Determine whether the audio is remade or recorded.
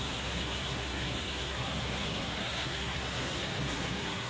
remade